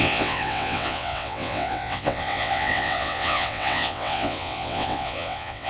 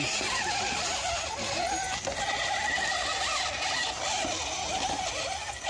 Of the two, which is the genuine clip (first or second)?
second